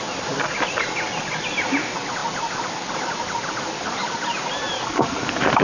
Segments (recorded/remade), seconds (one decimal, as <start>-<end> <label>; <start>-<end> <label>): 0.0-5.6 recorded